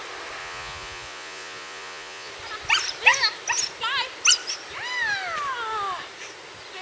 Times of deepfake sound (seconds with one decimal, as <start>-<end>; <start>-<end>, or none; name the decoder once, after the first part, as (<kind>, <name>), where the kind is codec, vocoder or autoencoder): 0.4-2.3 (vocoder, Vocos)